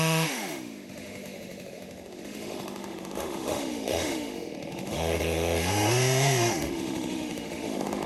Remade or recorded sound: remade